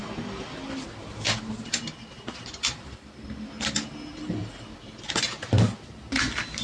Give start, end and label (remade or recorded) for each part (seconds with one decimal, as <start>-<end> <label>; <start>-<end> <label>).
0.0-6.6 recorded